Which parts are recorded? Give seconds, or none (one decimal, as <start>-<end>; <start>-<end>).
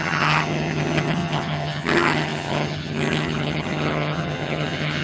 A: none